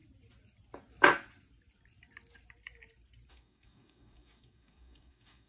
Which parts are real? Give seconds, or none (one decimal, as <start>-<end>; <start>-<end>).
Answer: 0.0-3.3